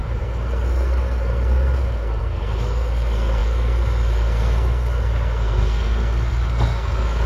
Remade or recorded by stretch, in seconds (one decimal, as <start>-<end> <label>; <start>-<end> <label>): 0.0-7.3 remade